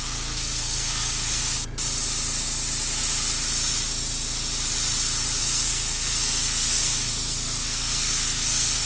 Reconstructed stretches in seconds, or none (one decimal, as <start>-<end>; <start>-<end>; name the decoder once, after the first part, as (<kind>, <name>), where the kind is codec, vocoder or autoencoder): 0.0-1.4 (codec, SNAC); 5.4-8.9